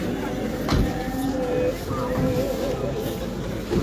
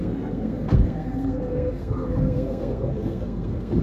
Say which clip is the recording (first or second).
first